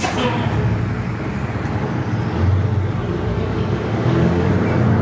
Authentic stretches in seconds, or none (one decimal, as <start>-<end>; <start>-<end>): 0.0-3.3; 4.5-5.0